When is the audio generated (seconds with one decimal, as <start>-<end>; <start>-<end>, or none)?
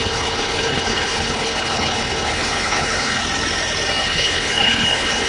0.0-3.2; 4.0-5.3